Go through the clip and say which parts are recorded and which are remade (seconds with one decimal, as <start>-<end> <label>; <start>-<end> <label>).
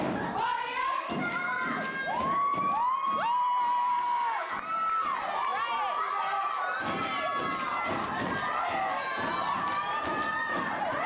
0.0-3.9 recorded; 3.9-4.5 remade; 4.5-11.1 recorded